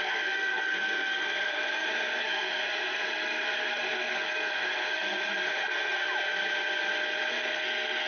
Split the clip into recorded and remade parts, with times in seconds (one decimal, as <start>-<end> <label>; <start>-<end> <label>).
0.0-6.0 remade; 6.0-7.3 recorded; 7.3-8.1 remade